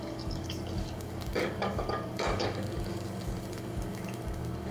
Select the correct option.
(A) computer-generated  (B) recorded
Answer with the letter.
A